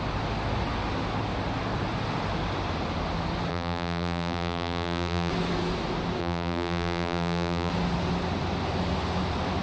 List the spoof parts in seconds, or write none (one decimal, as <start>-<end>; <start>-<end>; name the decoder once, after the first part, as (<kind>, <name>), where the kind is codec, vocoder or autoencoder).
3.5-5.3 (vocoder, BigVGAN v2); 6.2-7.7